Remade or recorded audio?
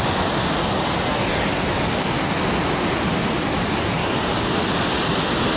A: recorded